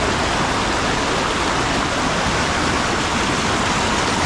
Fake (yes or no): no